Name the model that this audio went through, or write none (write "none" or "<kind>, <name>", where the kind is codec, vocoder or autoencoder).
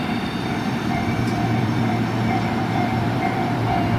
vocoder, BigVGAN v2